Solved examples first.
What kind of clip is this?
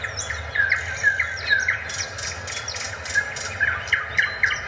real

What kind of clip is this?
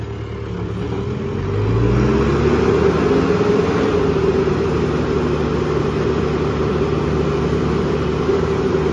real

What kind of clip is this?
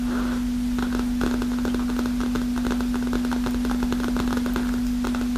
real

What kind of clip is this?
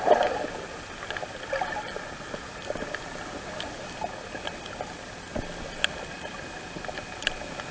real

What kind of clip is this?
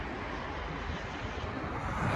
real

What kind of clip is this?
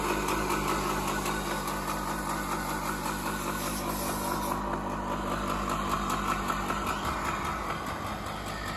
real